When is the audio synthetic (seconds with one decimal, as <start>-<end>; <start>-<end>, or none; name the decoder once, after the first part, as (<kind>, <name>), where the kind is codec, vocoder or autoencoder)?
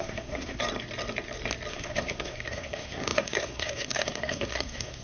0.0-0.6 (codec, SNAC); 1.7-5.0